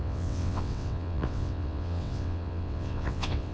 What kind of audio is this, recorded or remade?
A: remade